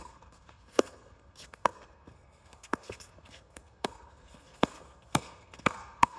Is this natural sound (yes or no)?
no